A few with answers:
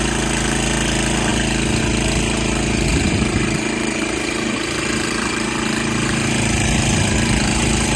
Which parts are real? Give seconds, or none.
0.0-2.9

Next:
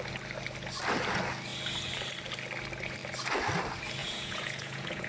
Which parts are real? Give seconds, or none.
0.0-4.0

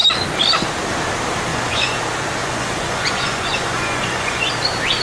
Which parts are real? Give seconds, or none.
0.0-1.5; 2.0-2.4; 4.5-5.0

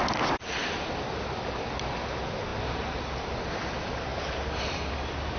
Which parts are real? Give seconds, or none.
0.0-4.1; 4.6-5.4

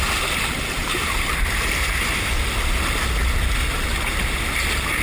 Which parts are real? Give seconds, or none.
0.0-0.8; 1.5-3.9; 4.5-5.0

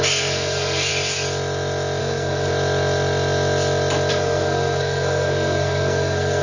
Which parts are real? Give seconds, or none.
0.9-2.0; 2.5-4.1

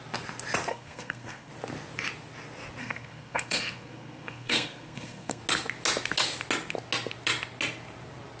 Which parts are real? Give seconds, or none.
0.0-0.7; 1.5-2.8; 5.4-8.4